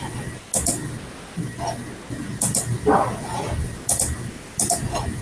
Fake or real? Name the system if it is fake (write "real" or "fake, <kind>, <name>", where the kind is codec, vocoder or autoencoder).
real